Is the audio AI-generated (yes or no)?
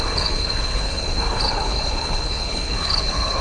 yes